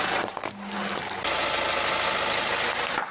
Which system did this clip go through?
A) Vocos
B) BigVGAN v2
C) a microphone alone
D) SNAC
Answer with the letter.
C